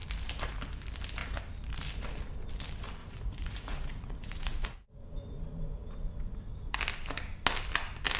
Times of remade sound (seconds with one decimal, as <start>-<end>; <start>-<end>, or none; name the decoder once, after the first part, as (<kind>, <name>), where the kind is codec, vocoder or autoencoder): 3.0-6.8 (vocoder, Vocos)